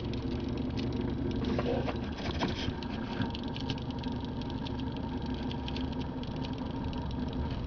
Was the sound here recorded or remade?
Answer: recorded